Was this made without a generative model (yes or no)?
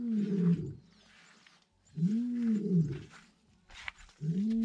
yes